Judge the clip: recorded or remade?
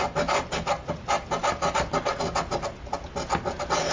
recorded